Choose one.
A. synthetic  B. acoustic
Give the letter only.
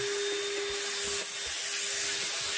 B